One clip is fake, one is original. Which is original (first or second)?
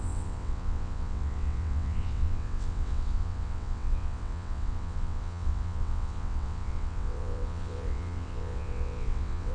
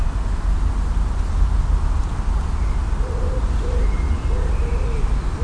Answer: second